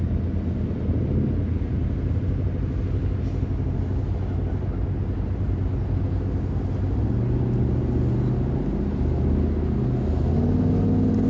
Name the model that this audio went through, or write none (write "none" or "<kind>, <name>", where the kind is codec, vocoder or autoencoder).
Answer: none